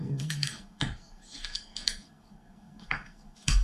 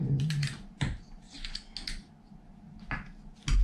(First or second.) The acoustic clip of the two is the second